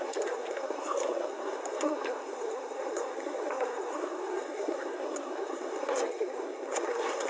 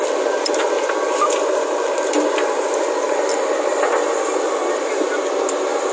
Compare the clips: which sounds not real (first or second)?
first